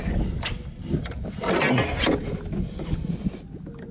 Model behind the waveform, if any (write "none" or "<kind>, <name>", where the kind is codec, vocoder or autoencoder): none